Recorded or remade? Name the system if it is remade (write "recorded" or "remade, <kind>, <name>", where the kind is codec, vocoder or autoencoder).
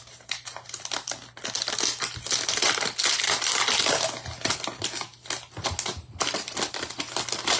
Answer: recorded